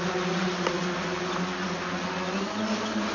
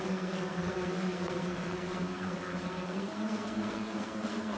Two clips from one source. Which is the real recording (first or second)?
first